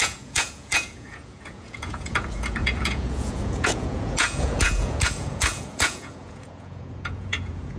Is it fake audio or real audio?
fake